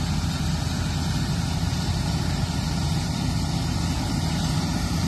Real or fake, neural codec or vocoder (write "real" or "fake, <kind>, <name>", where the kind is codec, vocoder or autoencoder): real